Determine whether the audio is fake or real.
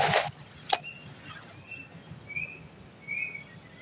real